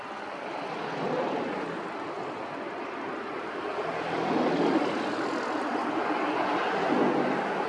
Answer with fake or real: real